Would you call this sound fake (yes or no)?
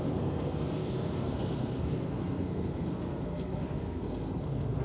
yes